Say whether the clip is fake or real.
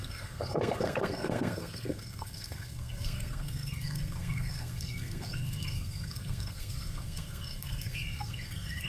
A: fake